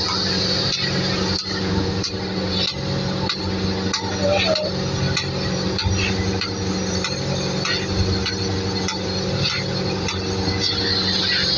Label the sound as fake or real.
real